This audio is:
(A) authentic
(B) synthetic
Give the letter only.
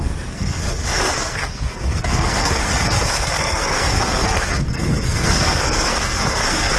B